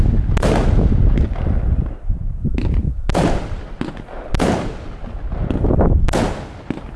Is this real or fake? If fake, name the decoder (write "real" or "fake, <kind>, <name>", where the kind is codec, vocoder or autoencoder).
real